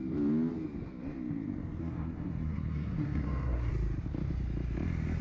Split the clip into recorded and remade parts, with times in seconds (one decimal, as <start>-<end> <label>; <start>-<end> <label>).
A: 0.0-1.8 recorded; 1.8-3.7 remade; 3.7-5.2 recorded